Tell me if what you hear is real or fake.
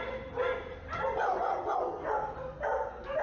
real